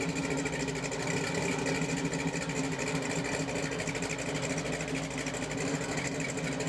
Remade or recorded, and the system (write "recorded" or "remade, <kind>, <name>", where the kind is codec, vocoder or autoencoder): recorded